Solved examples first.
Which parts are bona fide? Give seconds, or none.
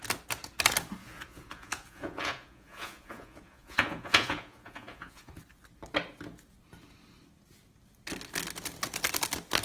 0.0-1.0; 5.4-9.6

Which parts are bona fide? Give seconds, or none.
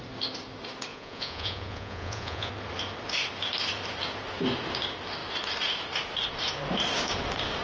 0.0-0.9; 2.5-7.6